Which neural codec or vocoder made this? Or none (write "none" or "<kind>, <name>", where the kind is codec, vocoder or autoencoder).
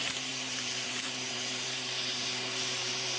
vocoder, BigVGAN v2